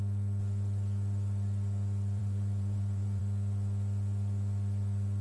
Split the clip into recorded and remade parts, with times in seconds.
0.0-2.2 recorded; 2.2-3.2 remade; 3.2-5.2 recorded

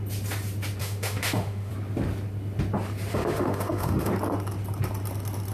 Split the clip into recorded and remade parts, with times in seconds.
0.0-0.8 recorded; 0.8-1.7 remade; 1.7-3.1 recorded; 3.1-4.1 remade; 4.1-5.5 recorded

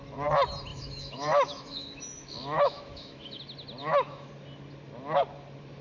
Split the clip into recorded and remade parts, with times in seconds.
0.0-0.7 recorded; 0.7-3.4 remade; 3.4-3.8 recorded; 3.8-4.3 remade; 4.3-5.8 recorded

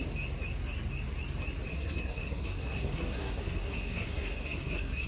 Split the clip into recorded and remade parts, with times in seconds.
0.0-1.7 recorded; 1.7-5.1 remade

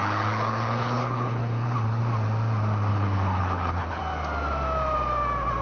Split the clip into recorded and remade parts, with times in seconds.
0.0-2.0 remade; 2.0-2.9 recorded; 2.9-4.0 remade; 4.0-5.6 recorded

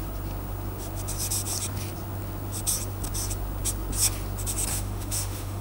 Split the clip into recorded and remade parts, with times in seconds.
0.0-4.7 recorded; 4.7-5.6 remade